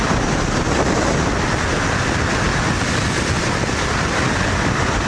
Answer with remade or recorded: recorded